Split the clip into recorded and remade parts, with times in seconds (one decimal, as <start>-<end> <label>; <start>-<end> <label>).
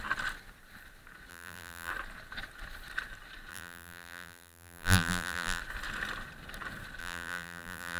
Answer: 0.0-1.3 recorded; 1.3-1.9 remade; 1.9-3.5 recorded; 3.5-5.6 remade; 5.6-7.0 recorded; 7.0-8.0 remade